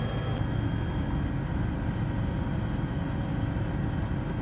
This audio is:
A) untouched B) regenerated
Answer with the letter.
A